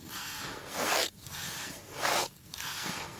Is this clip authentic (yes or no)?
no